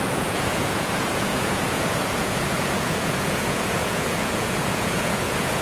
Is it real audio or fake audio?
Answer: fake